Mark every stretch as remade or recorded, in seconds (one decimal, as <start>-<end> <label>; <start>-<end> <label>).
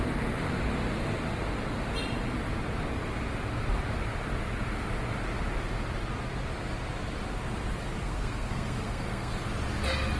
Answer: 0.0-8.0 recorded; 8.0-9.3 remade; 9.3-10.2 recorded